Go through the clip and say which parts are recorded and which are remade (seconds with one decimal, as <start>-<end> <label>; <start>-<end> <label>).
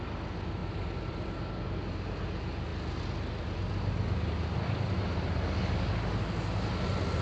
0.0-0.6 recorded; 0.6-1.3 remade; 1.3-7.2 recorded